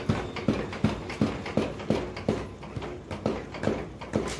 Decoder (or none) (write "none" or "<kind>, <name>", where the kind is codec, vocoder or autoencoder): none